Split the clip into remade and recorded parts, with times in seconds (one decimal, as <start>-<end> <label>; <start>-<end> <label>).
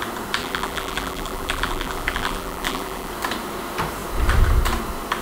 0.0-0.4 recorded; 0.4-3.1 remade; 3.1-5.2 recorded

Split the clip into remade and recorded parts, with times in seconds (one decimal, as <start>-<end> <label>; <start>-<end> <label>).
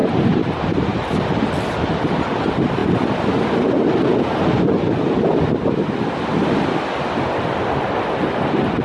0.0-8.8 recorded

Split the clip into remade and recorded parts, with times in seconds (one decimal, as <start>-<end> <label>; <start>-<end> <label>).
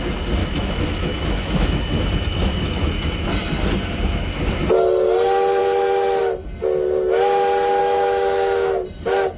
0.0-0.4 recorded; 0.4-1.8 remade; 1.8-7.8 recorded; 7.8-8.7 remade; 8.7-9.4 recorded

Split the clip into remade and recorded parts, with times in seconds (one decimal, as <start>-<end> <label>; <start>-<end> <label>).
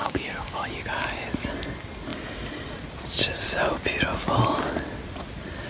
0.0-0.7 remade; 0.7-5.7 recorded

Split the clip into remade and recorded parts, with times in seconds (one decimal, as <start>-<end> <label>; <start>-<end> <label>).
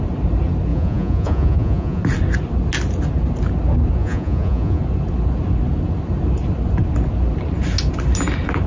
0.0-0.7 recorded; 0.7-2.0 remade; 2.0-4.0 recorded; 4.0-4.8 remade; 4.8-8.7 recorded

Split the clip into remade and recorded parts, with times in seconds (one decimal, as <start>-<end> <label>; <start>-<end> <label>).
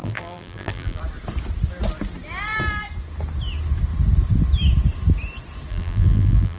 0.0-1.0 remade; 1.0-5.7 recorded; 5.7-6.6 remade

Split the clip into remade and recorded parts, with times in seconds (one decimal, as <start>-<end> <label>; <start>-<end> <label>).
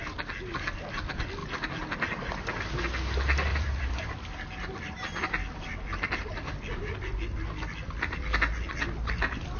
0.0-3.5 recorded; 3.5-8.4 remade; 8.4-9.6 recorded